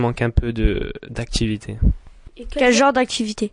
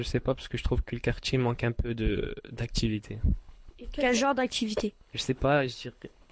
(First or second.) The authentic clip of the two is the first